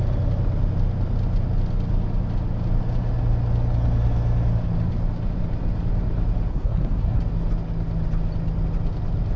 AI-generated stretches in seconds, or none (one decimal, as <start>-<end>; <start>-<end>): 6.5-7.2